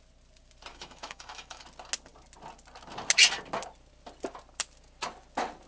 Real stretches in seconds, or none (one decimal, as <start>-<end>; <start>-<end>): 0.0-0.7; 1.6-5.7